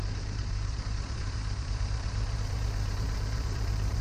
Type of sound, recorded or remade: remade